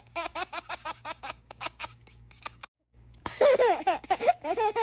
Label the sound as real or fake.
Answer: fake